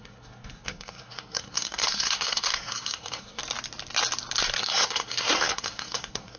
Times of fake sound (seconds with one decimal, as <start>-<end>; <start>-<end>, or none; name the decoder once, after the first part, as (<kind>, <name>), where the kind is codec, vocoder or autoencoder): 0.0-3.4 (codec, SNAC); 4.6-6.4